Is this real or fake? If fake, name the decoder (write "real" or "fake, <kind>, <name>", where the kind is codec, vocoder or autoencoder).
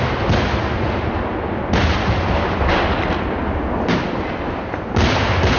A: real